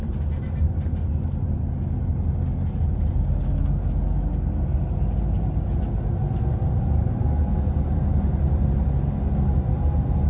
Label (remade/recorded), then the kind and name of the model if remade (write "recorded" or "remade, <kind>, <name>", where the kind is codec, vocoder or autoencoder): recorded